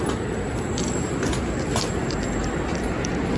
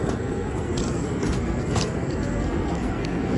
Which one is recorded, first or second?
first